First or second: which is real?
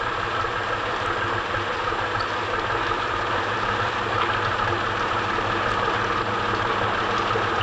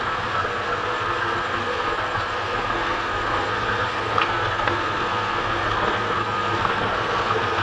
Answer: first